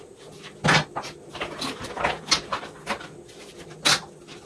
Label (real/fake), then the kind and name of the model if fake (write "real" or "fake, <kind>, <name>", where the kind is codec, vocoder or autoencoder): real